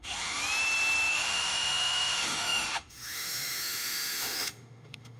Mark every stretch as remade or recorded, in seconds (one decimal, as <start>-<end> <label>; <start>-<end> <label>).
0.0-0.4 remade; 0.4-1.1 recorded; 1.1-5.2 remade